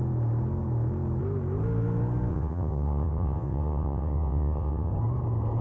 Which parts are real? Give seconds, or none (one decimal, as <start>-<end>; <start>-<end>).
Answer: 0.0-2.3; 4.9-5.6